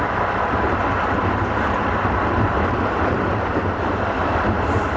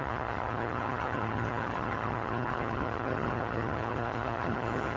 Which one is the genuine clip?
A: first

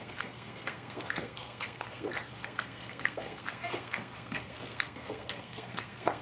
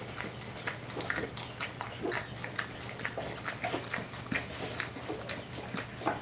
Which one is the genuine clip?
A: second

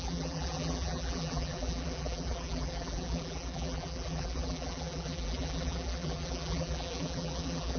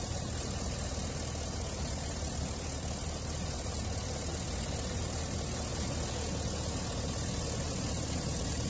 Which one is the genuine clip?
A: second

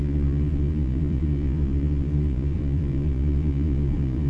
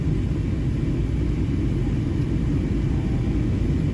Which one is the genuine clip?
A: second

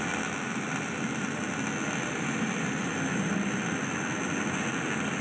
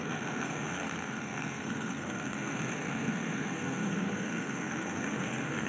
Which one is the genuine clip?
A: first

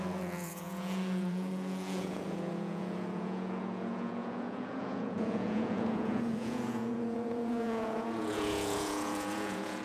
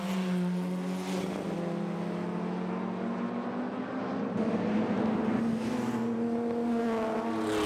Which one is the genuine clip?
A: second